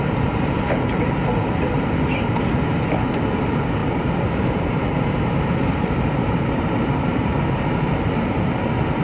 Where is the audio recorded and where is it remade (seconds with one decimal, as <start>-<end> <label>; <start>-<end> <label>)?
0.0-3.8 recorded; 3.8-7.3 remade; 7.3-9.0 recorded

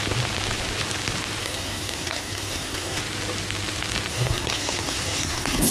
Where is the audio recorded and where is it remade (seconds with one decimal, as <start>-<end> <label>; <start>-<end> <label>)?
0.0-1.4 recorded; 1.4-3.0 remade; 3.0-4.1 recorded; 4.1-5.7 remade

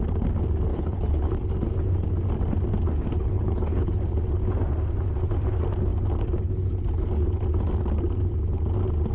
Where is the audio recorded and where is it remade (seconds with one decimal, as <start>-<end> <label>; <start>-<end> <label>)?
0.0-0.7 recorded; 0.7-1.3 remade; 1.3-3.1 recorded; 3.1-4.0 remade; 4.0-9.1 recorded

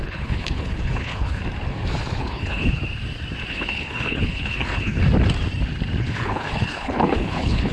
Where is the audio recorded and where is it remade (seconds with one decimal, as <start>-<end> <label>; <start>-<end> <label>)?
0.0-1.4 remade; 1.4-2.2 recorded; 2.2-2.8 remade; 2.8-3.5 recorded; 3.5-5.0 remade; 5.0-6.0 recorded; 6.0-7.7 remade

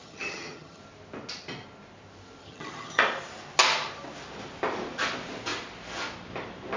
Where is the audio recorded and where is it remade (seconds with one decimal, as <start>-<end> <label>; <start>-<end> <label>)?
0.0-0.8 remade; 0.8-2.4 recorded; 2.4-3.0 remade; 3.0-6.8 recorded

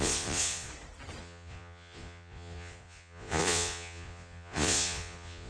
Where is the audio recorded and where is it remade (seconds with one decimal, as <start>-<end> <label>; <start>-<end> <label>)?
0.0-0.7 remade; 0.7-1.2 recorded; 1.2-5.5 remade

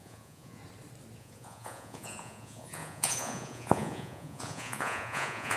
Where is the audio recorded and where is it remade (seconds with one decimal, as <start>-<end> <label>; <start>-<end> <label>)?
0.0-0.6 remade; 0.6-1.2 recorded; 1.2-5.6 remade